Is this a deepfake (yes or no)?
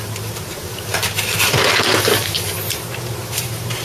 yes